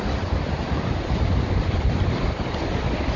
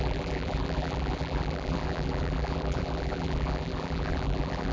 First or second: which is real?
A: first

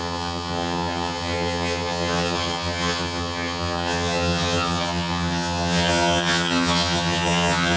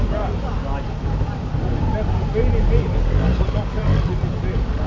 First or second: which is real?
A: second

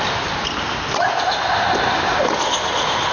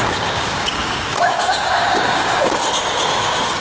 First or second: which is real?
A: first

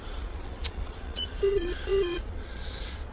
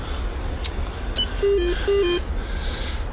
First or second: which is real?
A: second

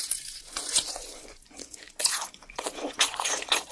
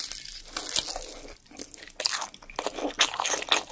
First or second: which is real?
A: second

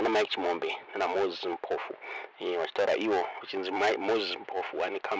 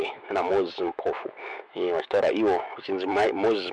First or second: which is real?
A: first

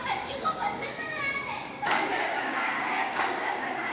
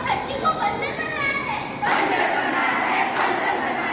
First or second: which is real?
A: second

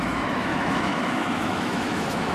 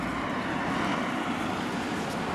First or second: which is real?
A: second